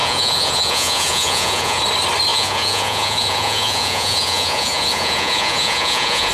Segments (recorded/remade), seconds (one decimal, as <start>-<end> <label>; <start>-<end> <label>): 0.0-1.8 remade; 1.8-2.3 recorded; 2.3-6.3 remade